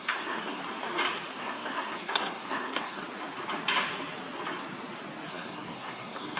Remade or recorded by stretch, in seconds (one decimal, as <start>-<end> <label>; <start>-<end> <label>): 0.0-0.6 remade; 0.6-1.4 recorded; 1.4-3.0 remade; 3.0-5.3 recorded; 5.3-6.4 remade